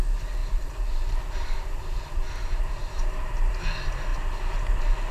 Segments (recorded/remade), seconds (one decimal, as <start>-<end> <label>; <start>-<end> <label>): 0.0-0.4 recorded; 0.4-3.5 remade; 3.5-5.1 recorded